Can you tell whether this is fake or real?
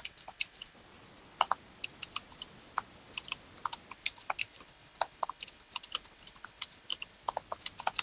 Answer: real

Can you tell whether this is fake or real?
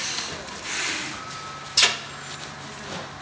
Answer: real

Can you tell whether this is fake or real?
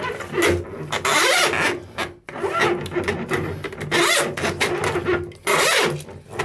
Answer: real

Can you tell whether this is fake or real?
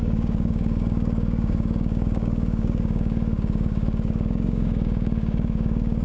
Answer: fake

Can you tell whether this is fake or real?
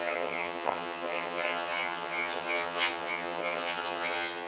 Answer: fake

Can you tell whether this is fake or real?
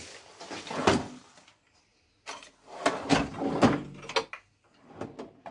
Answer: real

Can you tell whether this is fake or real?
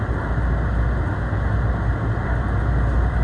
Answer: real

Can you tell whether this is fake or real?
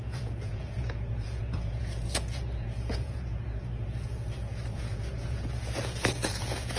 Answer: fake